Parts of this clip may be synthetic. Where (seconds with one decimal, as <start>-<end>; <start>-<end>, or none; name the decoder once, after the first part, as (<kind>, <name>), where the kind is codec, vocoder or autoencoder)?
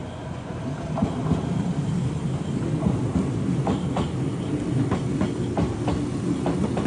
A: 0.0-0.5 (vocoder, Vocos)